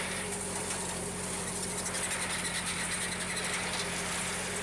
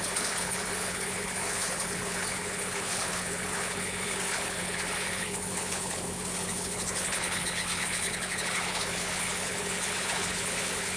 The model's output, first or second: second